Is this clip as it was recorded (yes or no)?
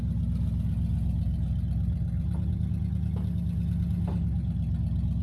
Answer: yes